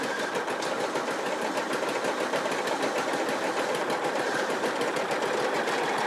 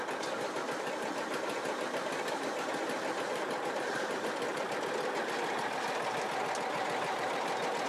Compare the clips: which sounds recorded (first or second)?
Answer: second